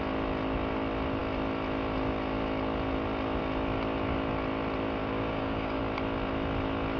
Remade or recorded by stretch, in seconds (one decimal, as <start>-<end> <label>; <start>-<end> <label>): 0.0-5.0 recorded; 5.0-5.8 remade; 5.8-7.0 recorded